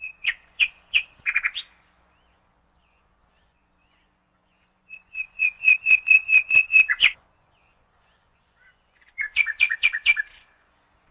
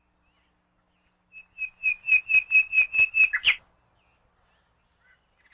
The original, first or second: second